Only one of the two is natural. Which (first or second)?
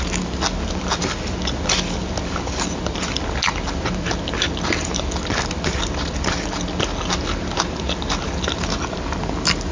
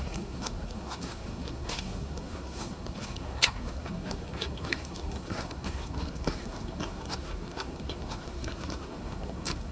first